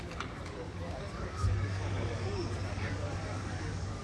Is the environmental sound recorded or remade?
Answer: remade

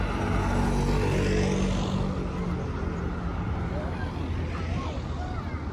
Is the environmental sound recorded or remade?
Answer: recorded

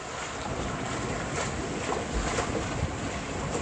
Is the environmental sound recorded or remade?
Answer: recorded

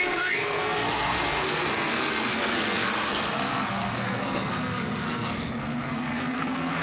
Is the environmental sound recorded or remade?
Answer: remade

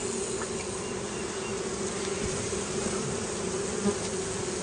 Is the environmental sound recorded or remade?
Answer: recorded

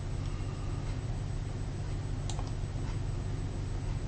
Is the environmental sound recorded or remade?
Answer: recorded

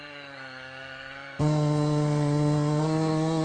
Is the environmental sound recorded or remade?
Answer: remade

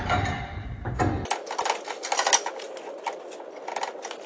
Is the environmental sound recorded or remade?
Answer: recorded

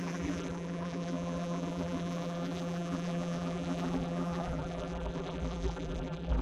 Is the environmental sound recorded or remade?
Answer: remade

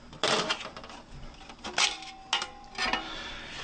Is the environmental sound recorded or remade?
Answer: recorded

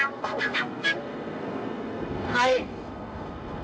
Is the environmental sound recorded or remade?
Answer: remade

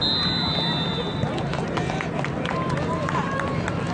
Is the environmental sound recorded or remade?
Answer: recorded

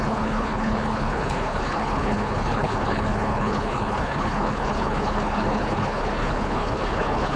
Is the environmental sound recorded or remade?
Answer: remade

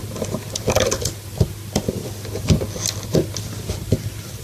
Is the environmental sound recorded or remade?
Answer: remade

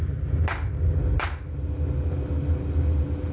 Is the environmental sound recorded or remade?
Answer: recorded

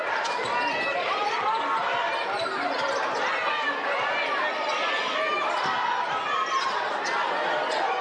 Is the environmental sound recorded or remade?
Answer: recorded